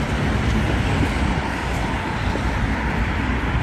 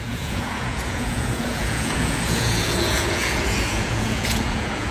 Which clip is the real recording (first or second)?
first